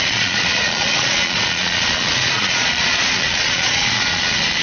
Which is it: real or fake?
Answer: fake